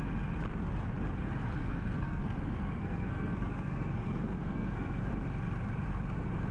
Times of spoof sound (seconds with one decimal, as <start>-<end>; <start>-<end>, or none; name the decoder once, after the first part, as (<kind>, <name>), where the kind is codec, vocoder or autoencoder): 1.6-5.1 (codec, SNAC)